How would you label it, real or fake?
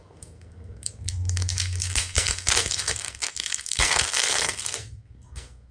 fake